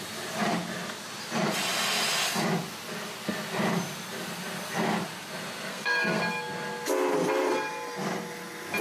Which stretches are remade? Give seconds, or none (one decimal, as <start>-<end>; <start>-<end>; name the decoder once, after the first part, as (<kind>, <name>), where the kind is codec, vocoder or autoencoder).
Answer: 5.7-6.2 (codec, SNAC)